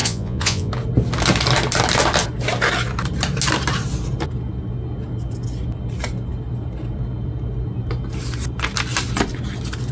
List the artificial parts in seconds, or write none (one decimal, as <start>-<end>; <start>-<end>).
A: 0.0-0.7